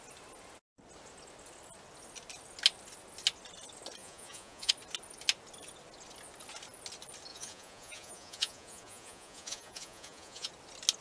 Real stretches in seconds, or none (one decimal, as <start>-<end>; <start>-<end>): 0.0-4.0; 4.7-7.3; 10.5-11.0